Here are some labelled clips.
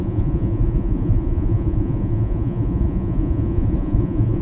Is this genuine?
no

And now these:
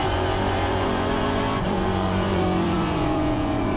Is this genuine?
no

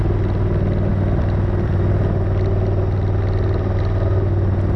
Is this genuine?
yes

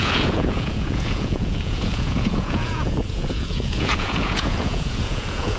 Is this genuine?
no